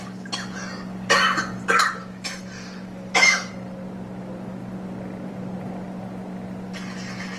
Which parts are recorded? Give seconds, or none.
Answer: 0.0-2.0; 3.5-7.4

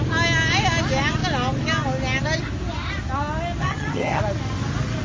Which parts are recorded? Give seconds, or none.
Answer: 0.0-3.6; 4.2-5.0